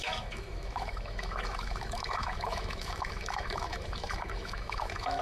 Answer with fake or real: fake